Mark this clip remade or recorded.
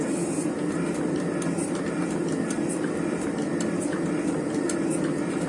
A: recorded